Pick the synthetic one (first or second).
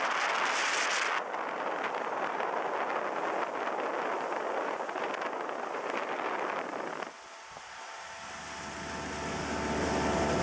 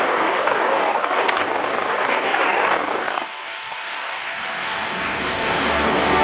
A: second